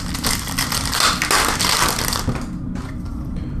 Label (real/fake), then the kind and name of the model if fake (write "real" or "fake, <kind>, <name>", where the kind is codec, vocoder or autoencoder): real